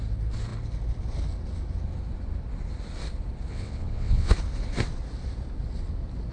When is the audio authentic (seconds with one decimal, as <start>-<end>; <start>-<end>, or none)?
0.0-3.5; 4.3-6.3